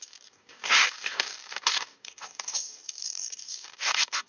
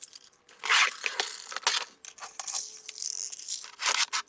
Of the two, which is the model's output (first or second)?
first